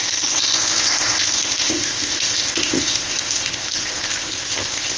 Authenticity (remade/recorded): remade